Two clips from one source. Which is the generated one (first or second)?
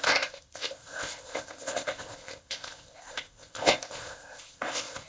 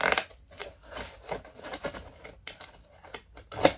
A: first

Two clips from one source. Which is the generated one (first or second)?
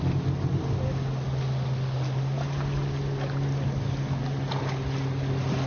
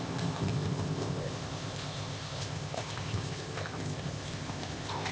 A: second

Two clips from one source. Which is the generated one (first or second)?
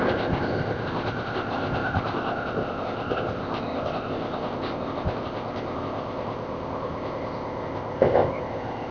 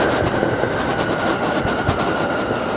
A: first